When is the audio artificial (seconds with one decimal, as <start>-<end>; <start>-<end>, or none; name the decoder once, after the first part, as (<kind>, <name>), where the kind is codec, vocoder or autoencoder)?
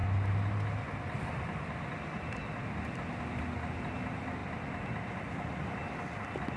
none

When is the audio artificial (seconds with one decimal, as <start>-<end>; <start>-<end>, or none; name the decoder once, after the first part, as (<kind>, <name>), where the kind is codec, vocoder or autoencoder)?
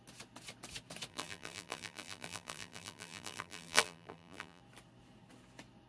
1.1-4.6 (vocoder, BigVGAN v2)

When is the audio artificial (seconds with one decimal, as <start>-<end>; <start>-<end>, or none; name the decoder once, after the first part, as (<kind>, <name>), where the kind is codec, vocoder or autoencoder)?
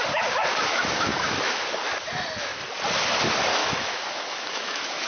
0.7-1.6 (autoencoder, DAC-VAE); 3.6-5.1